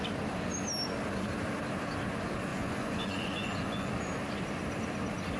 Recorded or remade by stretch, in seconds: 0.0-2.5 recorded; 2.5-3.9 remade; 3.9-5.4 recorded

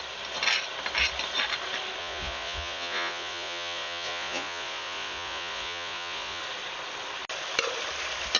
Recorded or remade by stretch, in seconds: 0.0-2.0 recorded; 2.0-6.4 remade; 6.4-8.4 recorded

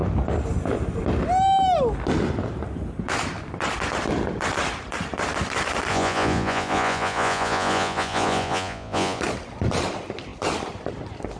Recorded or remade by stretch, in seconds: 0.0-5.9 recorded; 5.9-9.2 remade; 9.2-11.4 recorded